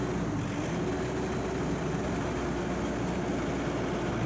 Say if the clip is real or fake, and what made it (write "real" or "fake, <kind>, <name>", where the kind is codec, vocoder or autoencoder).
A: real